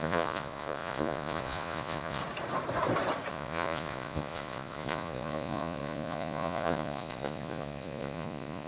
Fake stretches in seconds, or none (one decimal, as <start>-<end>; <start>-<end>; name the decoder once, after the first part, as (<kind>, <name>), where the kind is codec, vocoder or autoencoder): 0.0-2.2 (vocoder, Vocos); 3.3-8.7